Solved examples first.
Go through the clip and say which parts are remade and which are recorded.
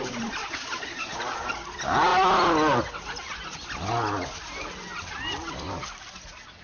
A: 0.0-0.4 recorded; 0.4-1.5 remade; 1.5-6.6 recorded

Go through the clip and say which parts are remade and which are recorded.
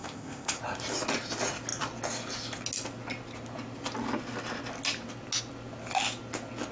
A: 0.0-0.6 remade; 0.6-6.7 recorded